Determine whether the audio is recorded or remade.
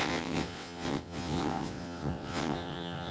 remade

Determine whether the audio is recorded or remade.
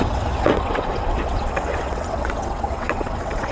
remade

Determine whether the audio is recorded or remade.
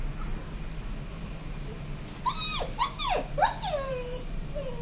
recorded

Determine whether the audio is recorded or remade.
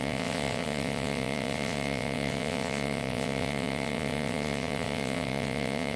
remade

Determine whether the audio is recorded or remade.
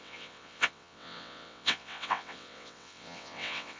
remade